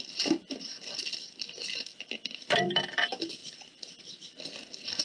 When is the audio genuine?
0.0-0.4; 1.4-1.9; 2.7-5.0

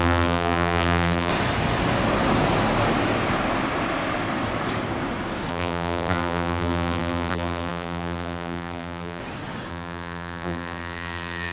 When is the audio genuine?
1.3-5.5; 9.2-9.7

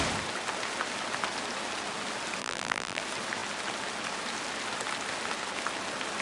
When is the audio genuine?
0.0-2.4; 3.0-6.2

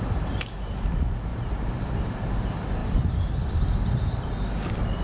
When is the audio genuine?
0.0-1.3; 2.0-2.8; 3.3-5.0

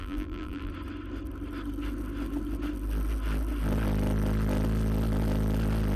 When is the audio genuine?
0.7-6.0

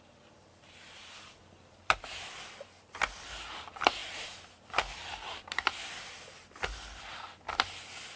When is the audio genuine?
none

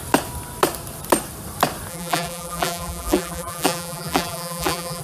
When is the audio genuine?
0.0-1.9